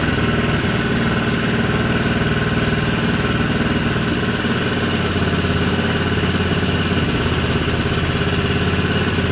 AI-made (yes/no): no